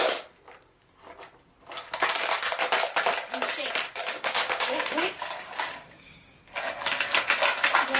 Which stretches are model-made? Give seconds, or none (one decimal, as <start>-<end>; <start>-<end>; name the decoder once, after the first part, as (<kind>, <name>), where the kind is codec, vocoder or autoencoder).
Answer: 4.0-6.4 (codec, DAC)